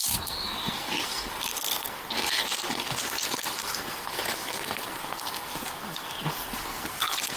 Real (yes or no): no